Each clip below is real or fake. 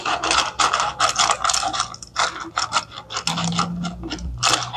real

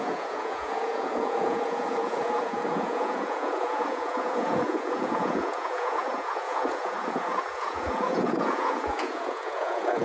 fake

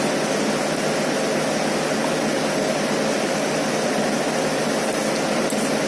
real